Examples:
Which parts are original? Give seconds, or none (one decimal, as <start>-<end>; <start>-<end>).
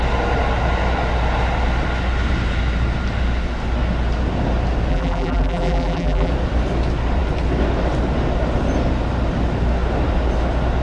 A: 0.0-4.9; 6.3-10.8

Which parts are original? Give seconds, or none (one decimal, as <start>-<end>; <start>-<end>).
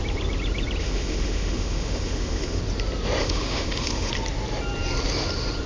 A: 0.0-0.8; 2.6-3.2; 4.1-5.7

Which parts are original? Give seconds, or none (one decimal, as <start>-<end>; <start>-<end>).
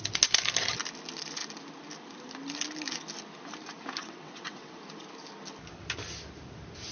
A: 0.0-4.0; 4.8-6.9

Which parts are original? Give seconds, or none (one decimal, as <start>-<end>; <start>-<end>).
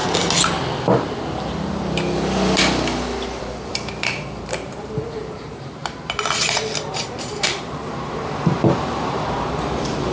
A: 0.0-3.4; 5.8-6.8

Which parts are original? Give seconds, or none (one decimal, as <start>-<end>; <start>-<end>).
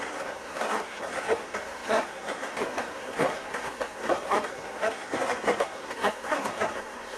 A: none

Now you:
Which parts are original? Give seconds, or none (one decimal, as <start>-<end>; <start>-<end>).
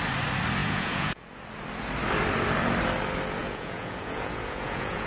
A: 0.0-0.6; 1.2-3.4